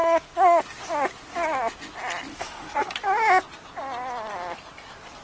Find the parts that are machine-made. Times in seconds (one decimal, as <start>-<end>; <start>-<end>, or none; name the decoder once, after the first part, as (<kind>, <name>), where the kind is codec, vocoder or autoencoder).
0.0-0.6 (autoencoder, DAC-VAE); 2.3-2.9